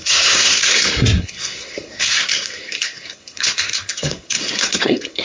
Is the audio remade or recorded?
remade